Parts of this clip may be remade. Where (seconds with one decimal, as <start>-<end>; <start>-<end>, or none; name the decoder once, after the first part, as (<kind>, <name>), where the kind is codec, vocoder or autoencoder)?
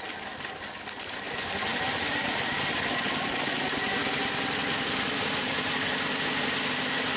none